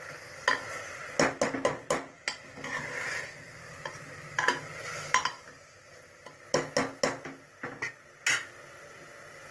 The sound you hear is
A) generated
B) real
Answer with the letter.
B